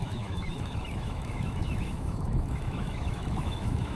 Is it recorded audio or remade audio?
remade